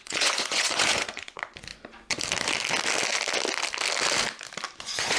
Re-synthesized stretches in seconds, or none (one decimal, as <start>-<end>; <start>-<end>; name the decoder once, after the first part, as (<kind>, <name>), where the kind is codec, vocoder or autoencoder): 0.0-1.7 (vocoder, Vocos); 4.8-5.2